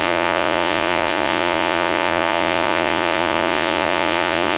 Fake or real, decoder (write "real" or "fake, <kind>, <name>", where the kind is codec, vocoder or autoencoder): fake, vocoder, Vocos